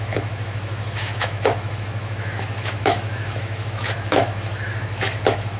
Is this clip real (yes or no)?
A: no